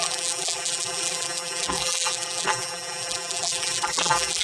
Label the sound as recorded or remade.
remade